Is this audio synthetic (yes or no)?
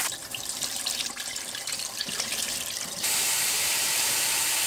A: yes